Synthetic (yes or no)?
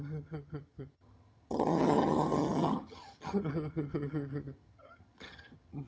yes